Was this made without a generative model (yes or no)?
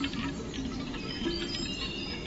yes